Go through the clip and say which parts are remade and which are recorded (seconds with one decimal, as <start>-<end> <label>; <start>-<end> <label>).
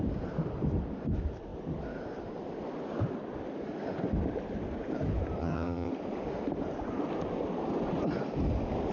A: 0.0-5.4 recorded; 5.4-5.9 remade; 5.9-8.9 recorded